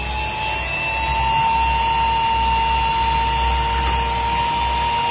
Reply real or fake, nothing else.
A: real